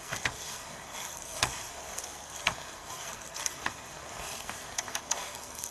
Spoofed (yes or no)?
yes